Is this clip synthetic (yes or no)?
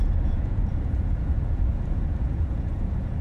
yes